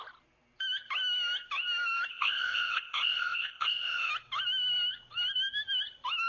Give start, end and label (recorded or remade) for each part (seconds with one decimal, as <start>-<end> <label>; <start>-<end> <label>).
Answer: 0.0-2.1 recorded; 2.1-4.1 remade; 4.1-6.3 recorded